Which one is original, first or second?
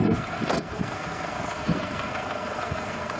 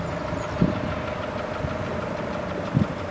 second